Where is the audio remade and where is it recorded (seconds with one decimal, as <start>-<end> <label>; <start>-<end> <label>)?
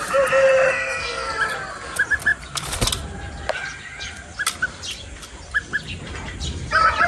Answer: 0.0-0.7 recorded; 0.7-1.4 remade; 1.4-7.1 recorded